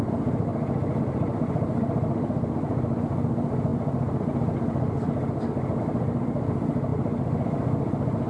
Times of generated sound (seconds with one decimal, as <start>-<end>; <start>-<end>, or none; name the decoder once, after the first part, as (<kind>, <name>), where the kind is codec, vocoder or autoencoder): 0.0-0.5 (vocoder, BigVGAN v2); 1.0-3.7; 5.8-6.9